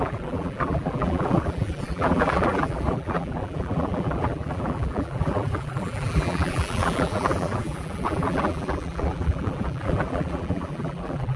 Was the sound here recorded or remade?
remade